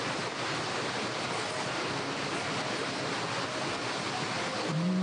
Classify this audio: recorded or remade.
recorded